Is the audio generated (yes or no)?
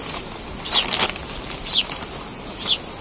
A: no